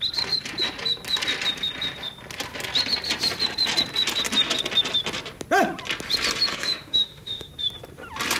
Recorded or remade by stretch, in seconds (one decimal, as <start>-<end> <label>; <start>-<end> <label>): 0.0-6.5 recorded; 6.5-7.5 remade; 7.5-8.4 recorded